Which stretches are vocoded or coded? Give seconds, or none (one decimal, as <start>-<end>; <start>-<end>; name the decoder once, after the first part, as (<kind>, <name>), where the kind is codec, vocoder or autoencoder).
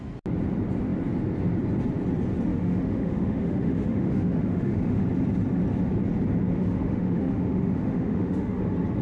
2.5-5.0 (autoencoder, DAC-VAE); 6.5-8.6